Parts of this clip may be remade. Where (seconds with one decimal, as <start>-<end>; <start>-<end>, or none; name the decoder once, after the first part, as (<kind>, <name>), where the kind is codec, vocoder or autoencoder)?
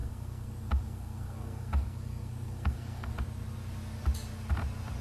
0.0-3.1 (codec, SNAC)